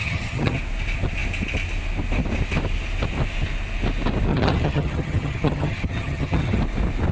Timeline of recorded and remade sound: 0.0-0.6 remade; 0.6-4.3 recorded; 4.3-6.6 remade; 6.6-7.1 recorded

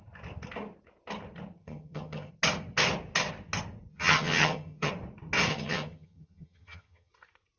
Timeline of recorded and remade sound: 0.0-1.6 recorded; 1.6-2.3 remade; 2.3-3.9 recorded; 3.9-4.9 remade; 4.9-5.5 recorded; 5.5-7.1 remade; 7.1-7.6 recorded

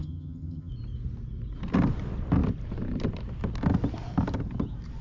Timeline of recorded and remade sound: 0.0-0.7 remade; 0.7-5.0 recorded